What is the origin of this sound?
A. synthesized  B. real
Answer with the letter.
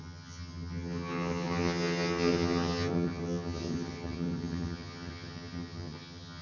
A